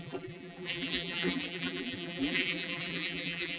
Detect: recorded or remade remade